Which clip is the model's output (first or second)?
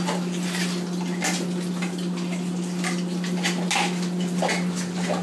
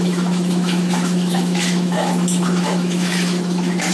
second